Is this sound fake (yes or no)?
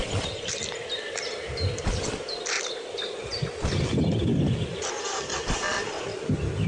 yes